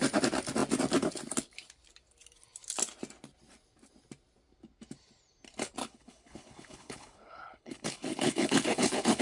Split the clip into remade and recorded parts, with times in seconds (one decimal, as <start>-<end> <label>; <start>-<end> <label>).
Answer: 0.0-5.8 recorded; 5.8-9.2 remade